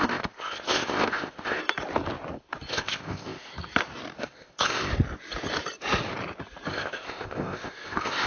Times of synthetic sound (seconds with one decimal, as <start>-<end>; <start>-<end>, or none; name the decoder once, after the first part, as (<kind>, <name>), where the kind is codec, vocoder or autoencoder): 0.0-1.6 (codec, ZipCodec); 2.7-3.5; 4.2-4.9; 6.7-8.3